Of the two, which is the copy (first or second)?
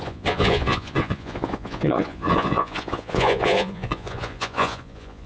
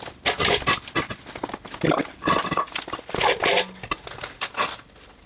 first